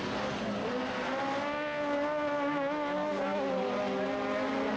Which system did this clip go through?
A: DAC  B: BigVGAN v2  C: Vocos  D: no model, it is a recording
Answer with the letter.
D